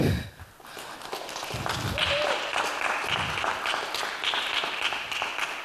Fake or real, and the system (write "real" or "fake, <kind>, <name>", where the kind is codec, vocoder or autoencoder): real